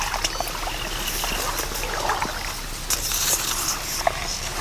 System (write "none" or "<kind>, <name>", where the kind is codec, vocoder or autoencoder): none